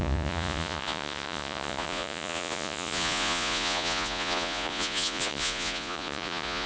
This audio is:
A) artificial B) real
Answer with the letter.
A